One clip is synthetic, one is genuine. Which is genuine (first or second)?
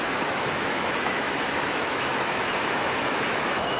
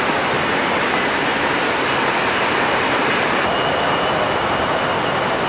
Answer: second